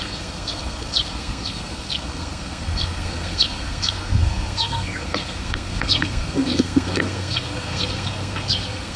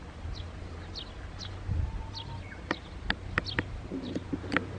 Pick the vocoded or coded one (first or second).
first